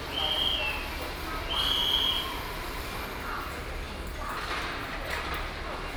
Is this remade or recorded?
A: recorded